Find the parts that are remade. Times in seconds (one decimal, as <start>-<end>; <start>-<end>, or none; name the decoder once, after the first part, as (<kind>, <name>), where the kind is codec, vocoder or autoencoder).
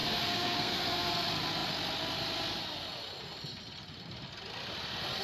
0.0-1.1 (codec, SNAC)